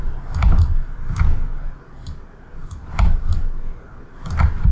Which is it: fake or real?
real